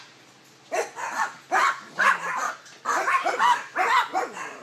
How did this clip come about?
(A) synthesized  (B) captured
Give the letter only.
B